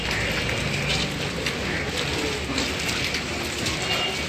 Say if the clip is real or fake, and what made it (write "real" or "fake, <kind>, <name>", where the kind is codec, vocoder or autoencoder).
real